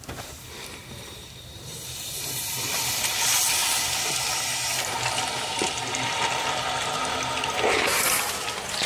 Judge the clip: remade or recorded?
recorded